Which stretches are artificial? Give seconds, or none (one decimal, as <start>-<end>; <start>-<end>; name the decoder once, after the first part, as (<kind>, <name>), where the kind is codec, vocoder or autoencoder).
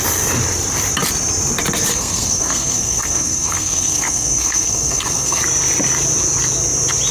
1.9-5.4 (codec, SNAC)